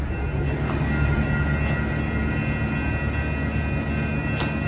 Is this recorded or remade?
recorded